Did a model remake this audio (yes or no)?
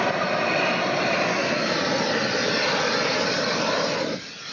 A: no